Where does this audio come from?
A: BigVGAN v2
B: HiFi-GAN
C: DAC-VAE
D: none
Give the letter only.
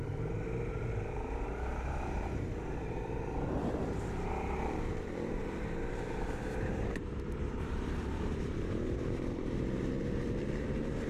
A